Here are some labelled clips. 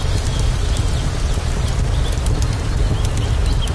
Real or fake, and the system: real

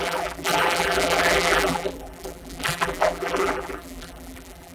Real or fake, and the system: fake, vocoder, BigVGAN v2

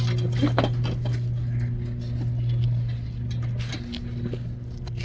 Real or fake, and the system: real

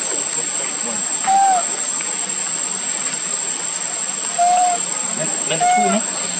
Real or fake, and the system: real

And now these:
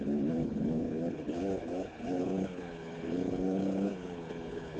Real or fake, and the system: fake, codec, HILCodec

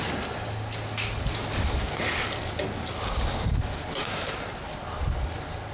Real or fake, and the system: real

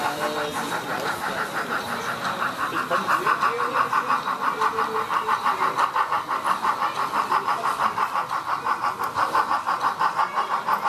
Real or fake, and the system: real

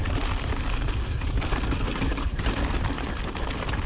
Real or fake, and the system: fake, vocoder, BigVGAN v2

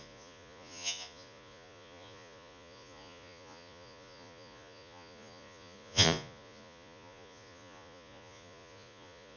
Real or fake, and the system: fake, vocoder, Vocos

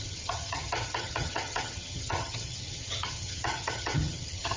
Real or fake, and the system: fake, vocoder, HiFi-GAN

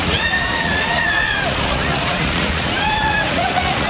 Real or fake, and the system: fake, vocoder, Vocos